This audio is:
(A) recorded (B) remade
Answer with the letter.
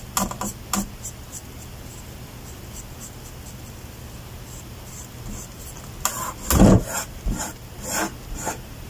A